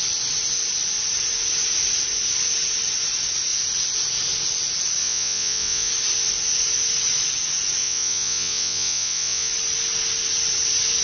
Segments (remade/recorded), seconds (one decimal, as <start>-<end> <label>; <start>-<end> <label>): 0.0-5.0 recorded; 5.0-5.9 remade; 5.9-7.8 recorded; 7.8-9.5 remade; 9.5-11.0 recorded